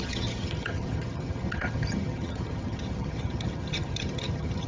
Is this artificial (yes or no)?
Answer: yes